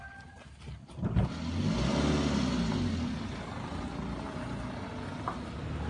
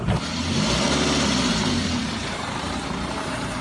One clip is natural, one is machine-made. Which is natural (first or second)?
first